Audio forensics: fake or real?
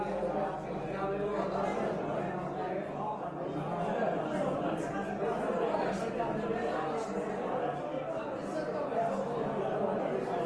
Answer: real